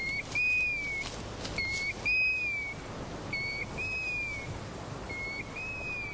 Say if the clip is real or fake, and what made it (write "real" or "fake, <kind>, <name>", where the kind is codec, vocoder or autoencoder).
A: real